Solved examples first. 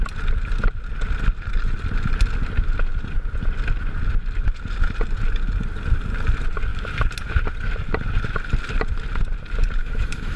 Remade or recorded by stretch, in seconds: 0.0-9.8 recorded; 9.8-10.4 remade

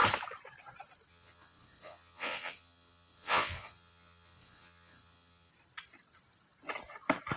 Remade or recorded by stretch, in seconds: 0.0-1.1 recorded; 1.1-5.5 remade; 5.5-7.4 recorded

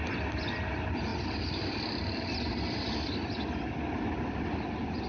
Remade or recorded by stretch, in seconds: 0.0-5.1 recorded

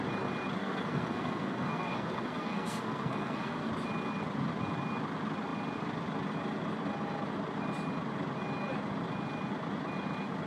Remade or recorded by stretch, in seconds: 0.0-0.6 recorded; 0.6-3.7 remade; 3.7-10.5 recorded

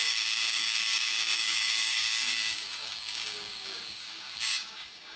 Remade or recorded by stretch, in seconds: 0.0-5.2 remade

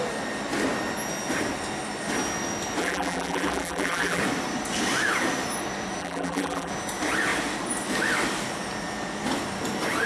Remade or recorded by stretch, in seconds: 0.0-2.8 recorded; 2.8-4.2 remade; 4.2-6.0 recorded; 6.0-6.7 remade; 6.7-10.1 recorded

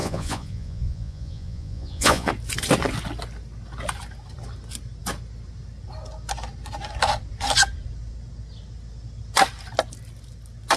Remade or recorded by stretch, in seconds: 0.0-2.3 remade; 2.3-10.8 recorded

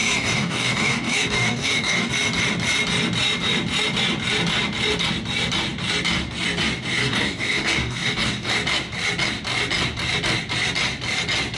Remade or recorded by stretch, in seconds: 0.0-2.1 remade; 2.1-7.0 recorded; 7.0-8.5 remade; 8.5-11.6 recorded